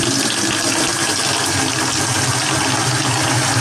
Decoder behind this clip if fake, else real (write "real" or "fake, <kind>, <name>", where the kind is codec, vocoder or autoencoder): real